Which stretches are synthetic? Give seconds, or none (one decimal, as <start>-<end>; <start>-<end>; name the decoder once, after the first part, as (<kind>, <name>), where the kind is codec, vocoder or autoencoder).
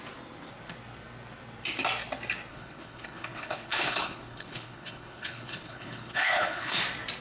2.5-6.8 (codec, HILCodec)